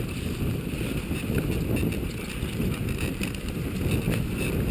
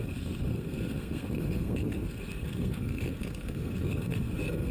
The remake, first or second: second